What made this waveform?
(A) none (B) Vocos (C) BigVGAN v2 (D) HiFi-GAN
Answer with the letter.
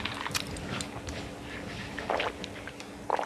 A